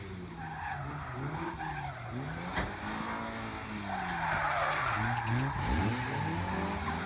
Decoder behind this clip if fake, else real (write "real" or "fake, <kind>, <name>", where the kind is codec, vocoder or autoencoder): real